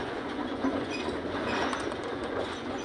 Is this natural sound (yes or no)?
no